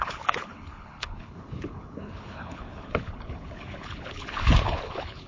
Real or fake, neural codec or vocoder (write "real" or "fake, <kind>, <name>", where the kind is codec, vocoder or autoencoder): fake, codec, HILCodec